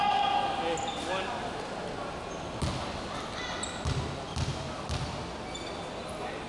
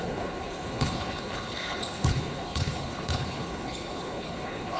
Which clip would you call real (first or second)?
first